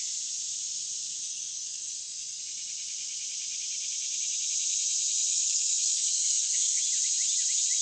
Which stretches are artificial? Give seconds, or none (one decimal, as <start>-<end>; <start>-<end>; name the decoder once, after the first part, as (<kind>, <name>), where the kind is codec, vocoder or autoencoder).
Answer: 1.2-2.4 (codec, SNAC); 5.3-6.8